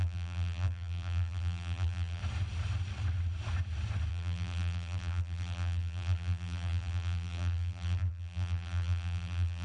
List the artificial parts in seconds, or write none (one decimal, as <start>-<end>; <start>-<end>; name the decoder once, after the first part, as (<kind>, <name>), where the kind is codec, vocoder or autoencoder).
0.0-2.2 (vocoder, BigVGAN v2); 4.1-9.6